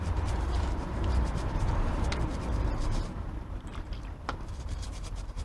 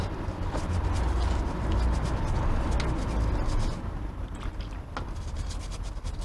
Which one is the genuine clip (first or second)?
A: second